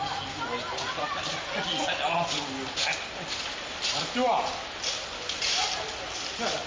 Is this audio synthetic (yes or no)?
no